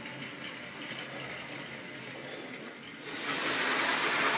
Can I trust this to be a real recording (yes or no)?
yes